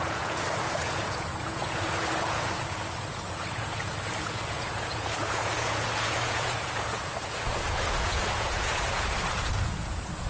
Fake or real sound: fake